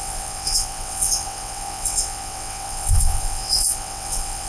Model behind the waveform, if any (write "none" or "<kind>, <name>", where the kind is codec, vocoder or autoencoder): vocoder, WaveNeXt